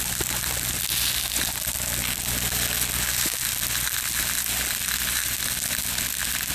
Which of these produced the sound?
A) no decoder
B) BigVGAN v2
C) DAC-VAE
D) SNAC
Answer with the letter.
A